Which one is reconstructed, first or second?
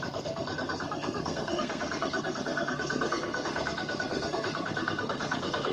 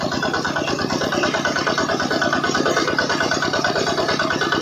first